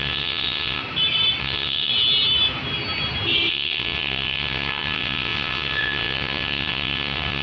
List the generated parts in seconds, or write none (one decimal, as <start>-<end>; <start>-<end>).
0.0-0.8; 1.4-1.9; 3.5-7.4